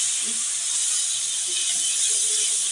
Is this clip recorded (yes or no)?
yes